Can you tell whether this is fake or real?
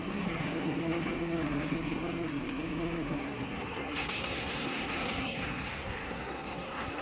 fake